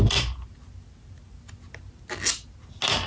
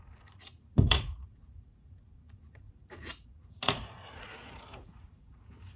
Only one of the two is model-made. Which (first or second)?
second